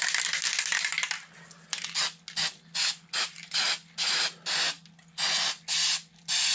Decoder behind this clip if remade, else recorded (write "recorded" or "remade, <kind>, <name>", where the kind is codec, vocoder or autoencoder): recorded